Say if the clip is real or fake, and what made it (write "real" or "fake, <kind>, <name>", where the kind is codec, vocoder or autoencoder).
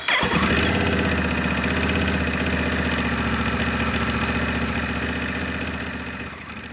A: real